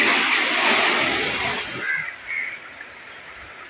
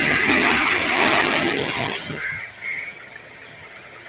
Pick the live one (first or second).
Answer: first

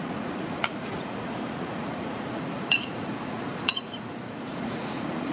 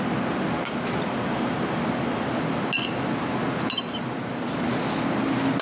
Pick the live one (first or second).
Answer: second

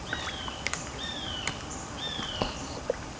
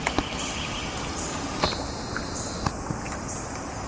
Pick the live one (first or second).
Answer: second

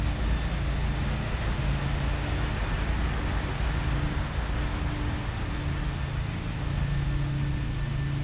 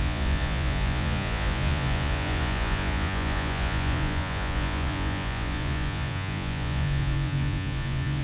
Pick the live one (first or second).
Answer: first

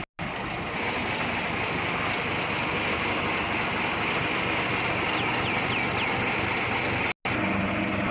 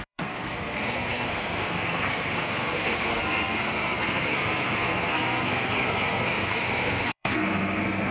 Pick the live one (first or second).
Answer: first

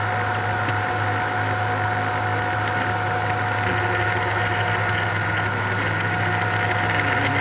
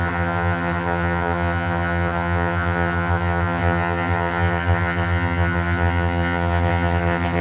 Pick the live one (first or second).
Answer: first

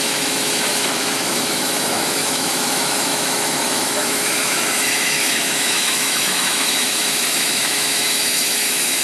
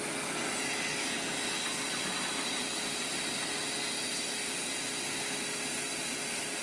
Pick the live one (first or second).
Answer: second